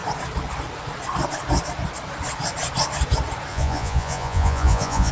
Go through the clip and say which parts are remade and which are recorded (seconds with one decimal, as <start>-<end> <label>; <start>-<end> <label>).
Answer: 0.0-3.5 recorded; 3.5-5.1 remade